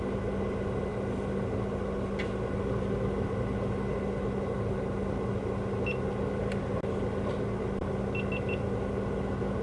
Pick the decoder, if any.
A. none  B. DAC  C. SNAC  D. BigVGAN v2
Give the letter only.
A